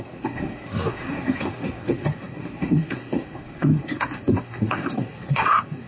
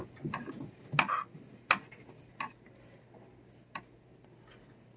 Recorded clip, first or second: second